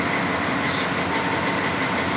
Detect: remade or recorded recorded